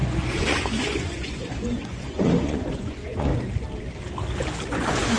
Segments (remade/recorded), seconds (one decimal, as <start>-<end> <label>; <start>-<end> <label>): 0.0-3.3 remade; 3.3-4.7 recorded; 4.7-5.2 remade